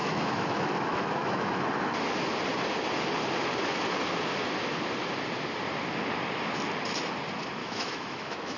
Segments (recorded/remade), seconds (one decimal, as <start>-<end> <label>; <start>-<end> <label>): 0.0-1.6 remade; 1.6-7.6 recorded; 7.6-8.6 remade